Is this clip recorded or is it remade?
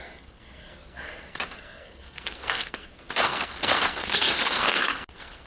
remade